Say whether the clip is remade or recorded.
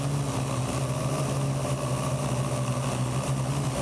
recorded